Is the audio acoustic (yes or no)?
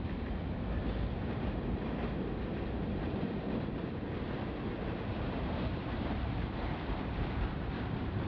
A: no